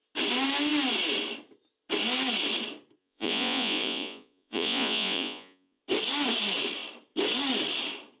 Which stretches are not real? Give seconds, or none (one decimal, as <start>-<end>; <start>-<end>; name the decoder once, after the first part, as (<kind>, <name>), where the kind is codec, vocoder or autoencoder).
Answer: 3.0-5.8 (vocoder, Vocos)